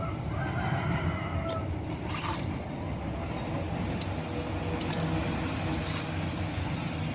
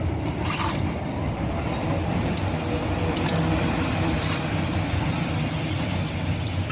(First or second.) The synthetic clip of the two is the second